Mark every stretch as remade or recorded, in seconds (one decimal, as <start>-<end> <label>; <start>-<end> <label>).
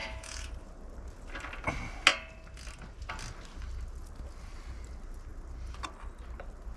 0.0-0.5 remade; 0.5-6.8 recorded